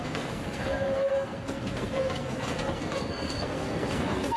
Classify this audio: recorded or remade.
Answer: remade